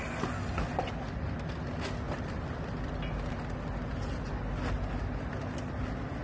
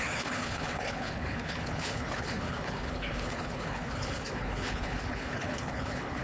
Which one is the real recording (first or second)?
first